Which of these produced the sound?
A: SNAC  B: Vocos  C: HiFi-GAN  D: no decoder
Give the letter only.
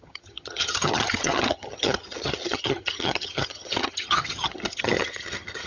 C